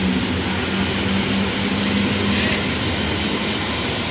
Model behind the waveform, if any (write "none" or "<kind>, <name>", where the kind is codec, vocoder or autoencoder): none